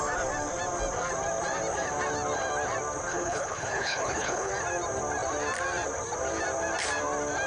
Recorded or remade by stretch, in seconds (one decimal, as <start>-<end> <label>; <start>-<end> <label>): 0.0-3.1 recorded; 3.1-4.5 remade; 4.5-7.5 recorded

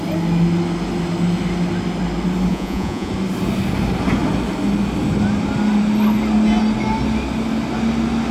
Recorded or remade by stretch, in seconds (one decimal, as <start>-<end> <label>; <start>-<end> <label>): 0.0-2.5 recorded; 2.5-3.1 remade; 3.1-8.3 recorded

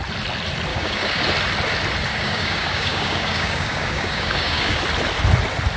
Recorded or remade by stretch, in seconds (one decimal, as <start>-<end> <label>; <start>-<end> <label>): 0.0-0.7 recorded; 0.7-1.2 remade; 1.2-2.1 recorded; 2.1-4.8 remade; 4.8-5.8 recorded

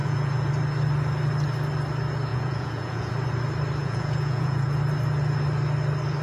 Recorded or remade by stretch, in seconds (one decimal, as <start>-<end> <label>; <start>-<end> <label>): 0.0-0.5 remade; 0.5-2.3 recorded; 2.3-3.1 remade; 3.1-3.8 recorded; 3.8-4.8 remade; 4.8-6.2 recorded

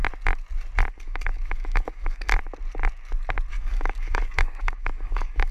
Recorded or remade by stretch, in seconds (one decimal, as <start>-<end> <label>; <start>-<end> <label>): 0.0-0.9 recorded; 0.9-2.3 remade; 2.3-3.5 recorded; 3.5-5.5 remade

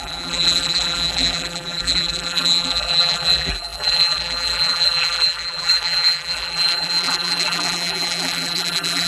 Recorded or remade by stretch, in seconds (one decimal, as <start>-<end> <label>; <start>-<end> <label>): 0.0-9.1 remade

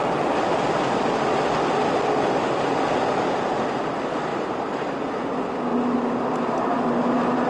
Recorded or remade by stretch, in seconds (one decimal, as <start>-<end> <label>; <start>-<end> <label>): 0.0-4.3 recorded; 4.3-5.3 remade; 5.3-7.5 recorded